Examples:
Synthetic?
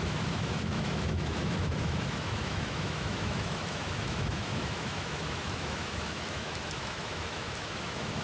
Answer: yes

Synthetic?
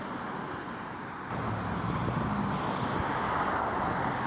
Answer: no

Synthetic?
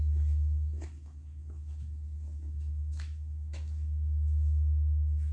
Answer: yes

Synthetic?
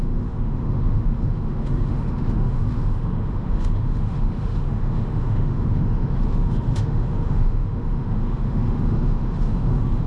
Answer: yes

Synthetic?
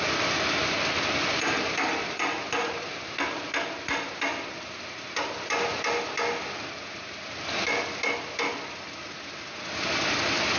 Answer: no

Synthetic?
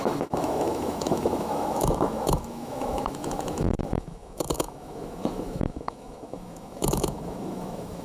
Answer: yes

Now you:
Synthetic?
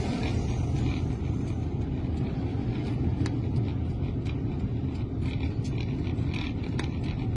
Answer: no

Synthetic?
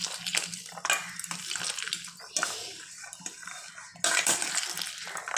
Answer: no